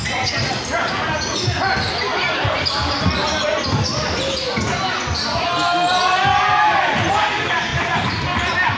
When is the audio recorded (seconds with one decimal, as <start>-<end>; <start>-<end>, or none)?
0.0-8.8